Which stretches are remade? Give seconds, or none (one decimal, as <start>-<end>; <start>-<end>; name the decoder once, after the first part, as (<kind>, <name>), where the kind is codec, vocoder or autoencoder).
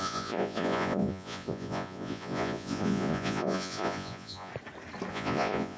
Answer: 0.0-4.5 (vocoder, Vocos); 5.1-5.8